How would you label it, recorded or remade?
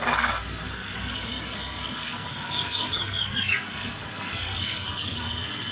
remade